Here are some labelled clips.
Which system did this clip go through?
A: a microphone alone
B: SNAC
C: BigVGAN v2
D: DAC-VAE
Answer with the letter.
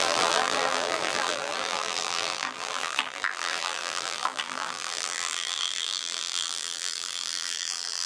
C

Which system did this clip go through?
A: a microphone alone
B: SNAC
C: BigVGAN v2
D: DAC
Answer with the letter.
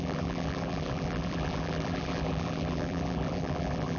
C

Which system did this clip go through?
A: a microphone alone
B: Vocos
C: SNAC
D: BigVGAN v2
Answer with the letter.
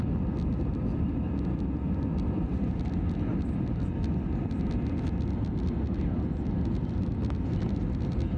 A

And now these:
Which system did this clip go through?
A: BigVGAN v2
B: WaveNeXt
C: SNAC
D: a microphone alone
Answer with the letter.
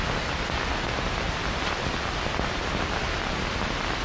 D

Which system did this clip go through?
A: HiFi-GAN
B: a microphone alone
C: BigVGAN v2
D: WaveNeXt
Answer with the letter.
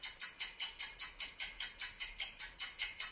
C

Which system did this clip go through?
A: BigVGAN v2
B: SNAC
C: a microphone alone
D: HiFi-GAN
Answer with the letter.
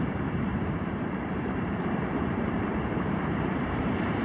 A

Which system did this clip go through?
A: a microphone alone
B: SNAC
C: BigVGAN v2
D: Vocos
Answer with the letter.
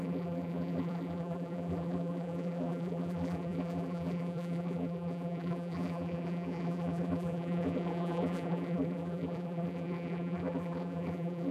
C